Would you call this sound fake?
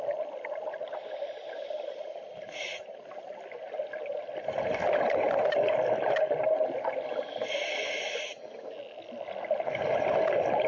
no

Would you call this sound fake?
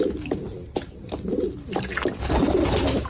no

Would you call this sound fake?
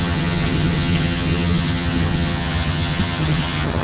yes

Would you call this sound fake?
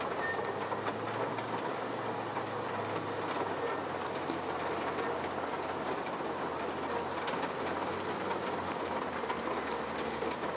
no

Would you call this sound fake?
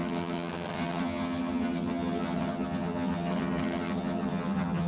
yes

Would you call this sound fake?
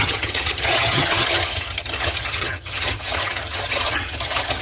yes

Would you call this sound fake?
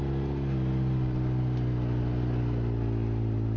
no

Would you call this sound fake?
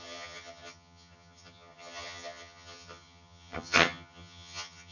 yes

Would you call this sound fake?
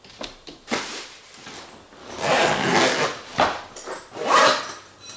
no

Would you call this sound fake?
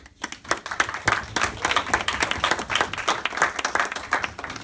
no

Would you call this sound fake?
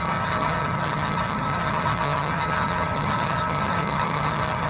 yes